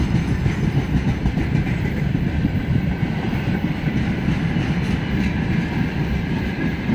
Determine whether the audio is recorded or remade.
recorded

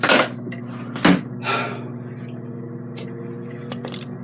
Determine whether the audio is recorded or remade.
recorded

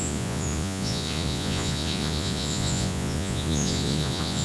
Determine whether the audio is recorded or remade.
remade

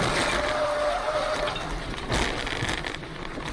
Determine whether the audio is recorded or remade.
recorded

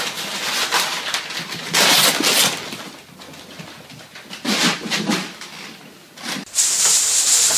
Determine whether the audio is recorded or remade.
recorded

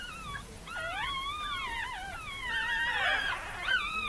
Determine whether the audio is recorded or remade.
recorded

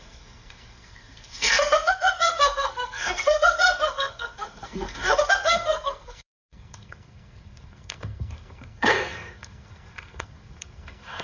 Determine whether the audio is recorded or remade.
remade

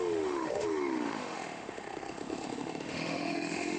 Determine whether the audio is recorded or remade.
remade